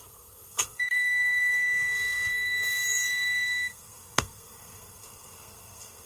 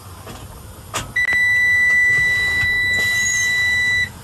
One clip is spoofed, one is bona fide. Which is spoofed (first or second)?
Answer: first